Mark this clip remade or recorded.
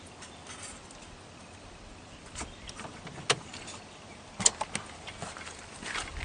recorded